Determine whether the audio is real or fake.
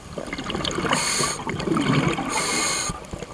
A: real